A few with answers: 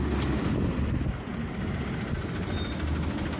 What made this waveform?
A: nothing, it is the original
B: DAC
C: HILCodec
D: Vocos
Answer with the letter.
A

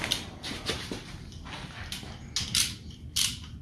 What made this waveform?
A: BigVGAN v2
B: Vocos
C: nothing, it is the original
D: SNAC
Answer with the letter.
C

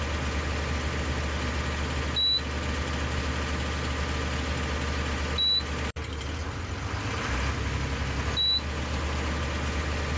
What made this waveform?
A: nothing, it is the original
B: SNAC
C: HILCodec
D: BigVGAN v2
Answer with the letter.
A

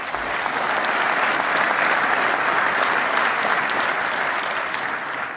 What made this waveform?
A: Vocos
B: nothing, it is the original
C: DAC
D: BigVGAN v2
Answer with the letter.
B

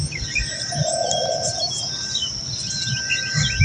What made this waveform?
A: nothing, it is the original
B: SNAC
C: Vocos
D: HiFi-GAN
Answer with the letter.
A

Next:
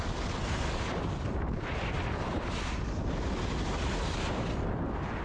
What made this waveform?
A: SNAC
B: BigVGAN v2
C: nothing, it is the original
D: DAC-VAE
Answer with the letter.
C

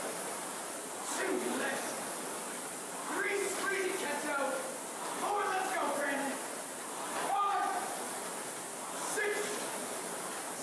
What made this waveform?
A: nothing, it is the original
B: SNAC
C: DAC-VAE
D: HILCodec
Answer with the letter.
A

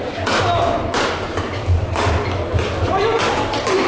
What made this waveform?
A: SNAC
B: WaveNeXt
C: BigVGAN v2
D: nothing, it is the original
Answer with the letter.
D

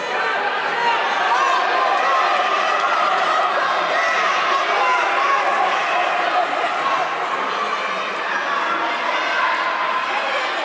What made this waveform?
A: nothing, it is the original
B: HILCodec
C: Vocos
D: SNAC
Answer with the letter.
A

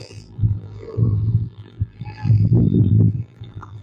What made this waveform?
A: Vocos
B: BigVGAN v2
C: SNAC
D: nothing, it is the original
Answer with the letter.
B